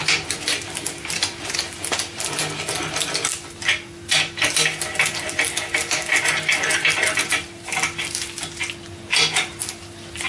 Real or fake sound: real